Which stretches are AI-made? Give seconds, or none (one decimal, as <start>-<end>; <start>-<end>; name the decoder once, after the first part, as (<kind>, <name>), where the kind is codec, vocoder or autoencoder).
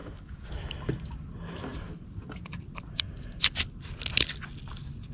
none